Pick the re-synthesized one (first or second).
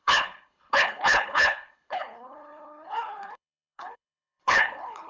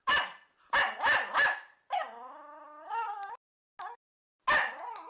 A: first